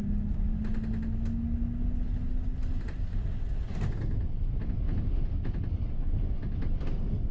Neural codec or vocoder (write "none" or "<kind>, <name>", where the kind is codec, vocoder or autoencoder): none